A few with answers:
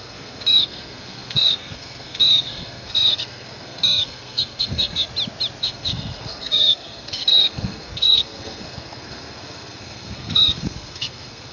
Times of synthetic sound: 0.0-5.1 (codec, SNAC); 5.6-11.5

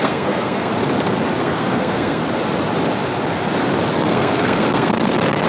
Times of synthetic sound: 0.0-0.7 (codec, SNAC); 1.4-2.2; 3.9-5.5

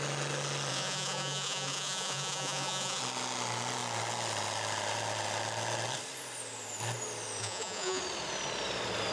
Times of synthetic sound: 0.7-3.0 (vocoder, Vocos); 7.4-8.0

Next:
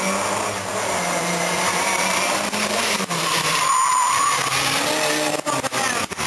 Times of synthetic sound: 0.7-3.6 (vocoder, BigVGAN v2)

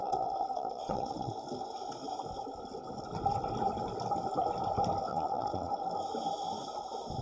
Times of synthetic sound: 0.0-1.3 (vocoder, WaveNeXt); 5.1-5.7